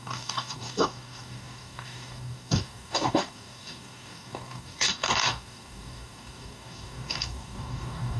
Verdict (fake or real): fake